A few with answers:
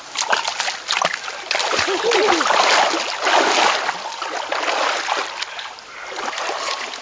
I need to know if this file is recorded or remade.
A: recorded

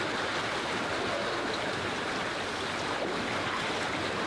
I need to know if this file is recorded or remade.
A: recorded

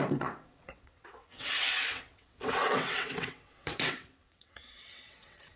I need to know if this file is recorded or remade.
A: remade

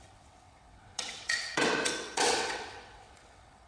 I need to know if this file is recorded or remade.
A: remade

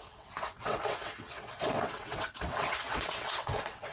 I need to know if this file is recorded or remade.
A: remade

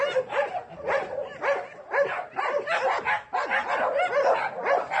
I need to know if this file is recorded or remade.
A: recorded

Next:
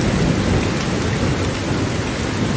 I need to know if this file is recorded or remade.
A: recorded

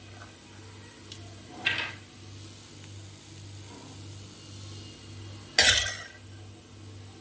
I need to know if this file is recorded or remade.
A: recorded